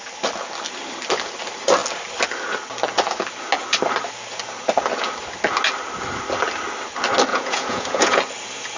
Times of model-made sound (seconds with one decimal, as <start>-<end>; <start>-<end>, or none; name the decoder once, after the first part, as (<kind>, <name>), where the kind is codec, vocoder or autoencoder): 7.3-8.2 (vocoder, Vocos)